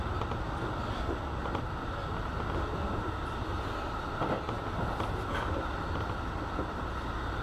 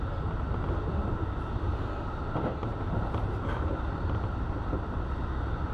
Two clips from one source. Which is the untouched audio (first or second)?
first